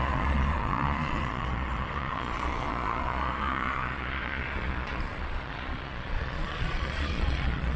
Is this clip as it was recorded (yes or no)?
no